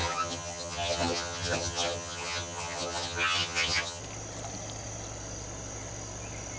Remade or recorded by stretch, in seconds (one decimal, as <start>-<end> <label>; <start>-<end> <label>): 0.0-4.0 remade; 4.0-6.6 recorded